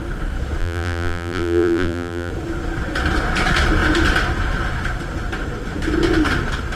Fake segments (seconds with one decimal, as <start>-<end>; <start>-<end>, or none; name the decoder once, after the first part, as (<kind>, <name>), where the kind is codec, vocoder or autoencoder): 0.6-2.3 (vocoder, BigVGAN v2)